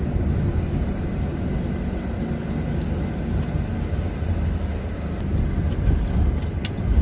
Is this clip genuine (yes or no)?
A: yes